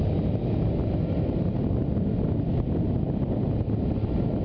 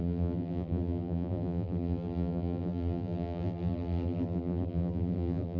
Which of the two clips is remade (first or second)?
second